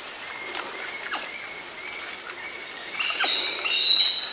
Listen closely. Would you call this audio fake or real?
real